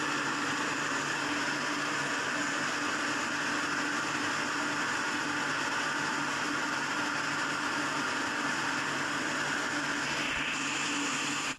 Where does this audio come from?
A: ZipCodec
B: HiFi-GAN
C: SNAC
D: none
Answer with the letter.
D